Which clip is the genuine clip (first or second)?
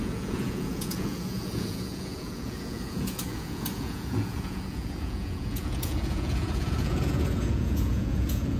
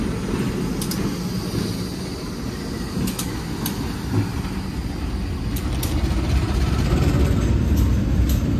second